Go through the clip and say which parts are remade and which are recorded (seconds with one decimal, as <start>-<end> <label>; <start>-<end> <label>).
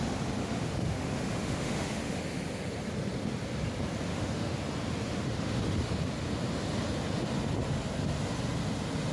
0.0-0.4 recorded; 0.4-2.2 remade; 2.2-4.1 recorded; 4.1-4.6 remade; 4.6-5.2 recorded; 5.2-5.8 remade; 5.8-9.1 recorded